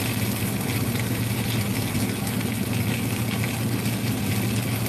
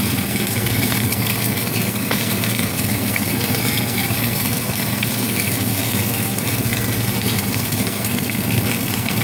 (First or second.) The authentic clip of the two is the first